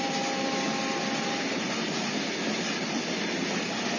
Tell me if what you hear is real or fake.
real